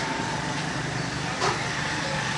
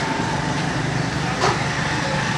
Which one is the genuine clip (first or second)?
first